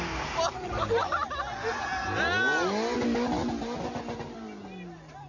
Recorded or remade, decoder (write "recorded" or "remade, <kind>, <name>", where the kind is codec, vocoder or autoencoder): recorded